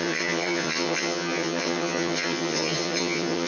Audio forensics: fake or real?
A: fake